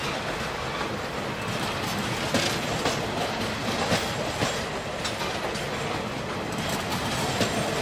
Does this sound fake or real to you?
real